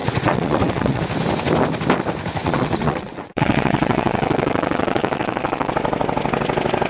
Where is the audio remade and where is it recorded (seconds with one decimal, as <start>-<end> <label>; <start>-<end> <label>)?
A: 0.0-1.0 remade; 1.0-2.4 recorded; 2.4-5.7 remade; 5.7-6.9 recorded